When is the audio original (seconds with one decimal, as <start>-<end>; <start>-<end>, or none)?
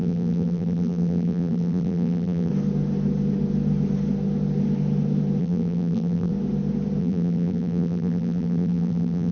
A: 2.5-5.4; 6.3-7.0